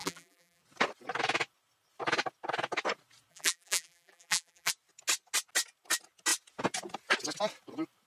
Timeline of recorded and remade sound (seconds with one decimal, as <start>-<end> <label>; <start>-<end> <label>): 0.0-0.6 remade; 0.6-3.3 recorded; 3.3-4.7 remade; 4.7-8.1 recorded